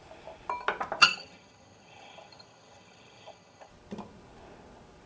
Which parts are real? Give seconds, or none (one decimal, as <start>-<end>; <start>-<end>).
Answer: 0.0-1.0; 3.7-5.1